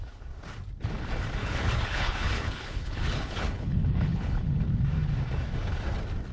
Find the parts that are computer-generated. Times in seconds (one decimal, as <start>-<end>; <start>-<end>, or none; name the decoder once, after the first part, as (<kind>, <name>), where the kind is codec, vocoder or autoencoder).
1.4-4.6 (codec, HILCodec)